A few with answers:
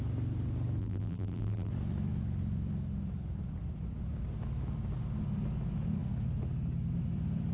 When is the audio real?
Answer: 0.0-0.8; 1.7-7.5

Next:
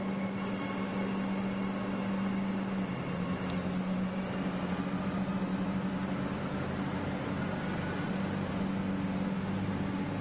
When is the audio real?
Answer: 0.0-10.2

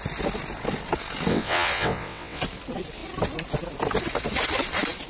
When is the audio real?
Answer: 0.0-1.3; 2.4-5.1

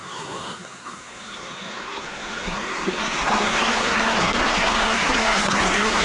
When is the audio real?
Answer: none